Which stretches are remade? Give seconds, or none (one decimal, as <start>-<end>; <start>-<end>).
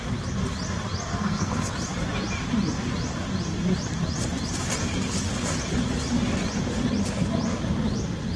1.1-1.7